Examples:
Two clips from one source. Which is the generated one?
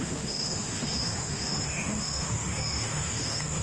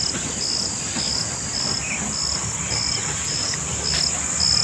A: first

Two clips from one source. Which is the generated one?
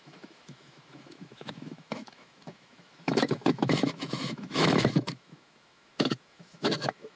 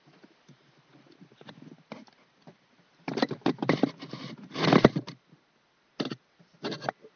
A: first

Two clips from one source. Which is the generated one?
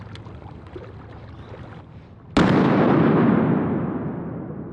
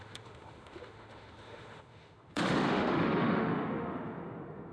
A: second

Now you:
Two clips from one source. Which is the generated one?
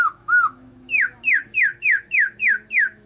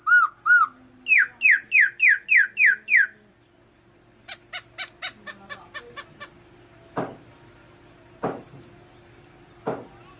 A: first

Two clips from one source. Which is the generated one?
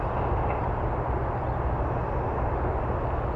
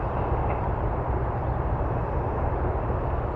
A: second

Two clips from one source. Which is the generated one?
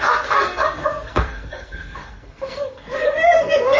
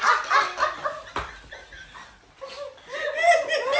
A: first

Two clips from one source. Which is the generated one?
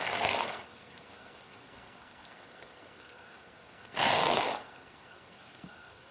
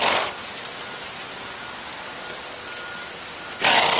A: first